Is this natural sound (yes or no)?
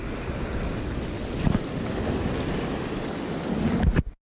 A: yes